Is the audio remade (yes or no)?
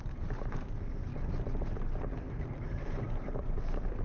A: no